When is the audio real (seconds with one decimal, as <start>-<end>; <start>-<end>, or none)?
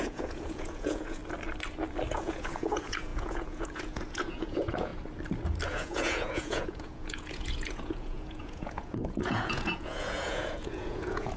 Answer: 1.2-2.1; 4.9-5.7